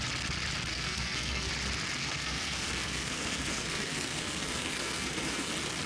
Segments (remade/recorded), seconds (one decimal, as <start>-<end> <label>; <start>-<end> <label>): 0.0-0.7 recorded; 0.7-1.5 remade; 1.5-2.0 recorded; 2.0-5.5 remade; 5.5-5.9 recorded